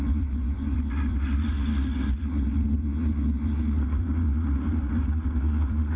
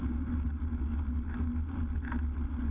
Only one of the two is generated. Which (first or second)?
first